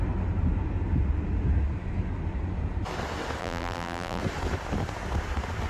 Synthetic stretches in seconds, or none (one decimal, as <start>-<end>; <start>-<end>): 3.4-4.2